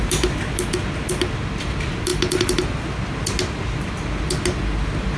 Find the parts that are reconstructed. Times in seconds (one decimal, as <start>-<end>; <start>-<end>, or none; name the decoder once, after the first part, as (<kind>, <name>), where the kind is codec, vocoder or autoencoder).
none